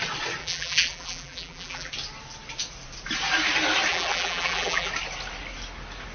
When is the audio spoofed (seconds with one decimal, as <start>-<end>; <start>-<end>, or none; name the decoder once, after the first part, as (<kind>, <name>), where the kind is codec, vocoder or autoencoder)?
0.4-1.9 (vocoder, BigVGAN v2); 3.9-4.9